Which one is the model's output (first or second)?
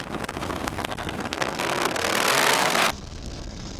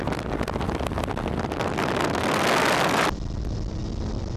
first